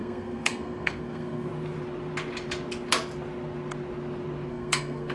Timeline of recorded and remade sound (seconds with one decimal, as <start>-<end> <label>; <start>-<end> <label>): 0.0-1.5 remade; 1.5-4.5 recorded; 4.5-5.1 remade